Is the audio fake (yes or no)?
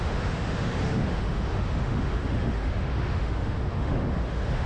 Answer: yes